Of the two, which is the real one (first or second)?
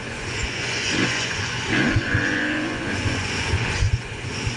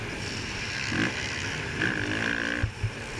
second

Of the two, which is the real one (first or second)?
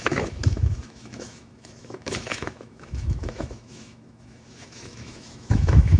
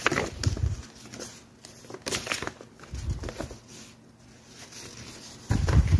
second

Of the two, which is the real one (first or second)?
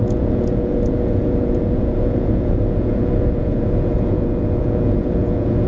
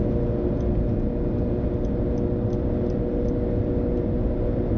second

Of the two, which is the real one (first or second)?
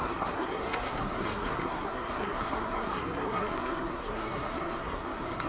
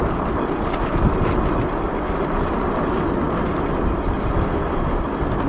second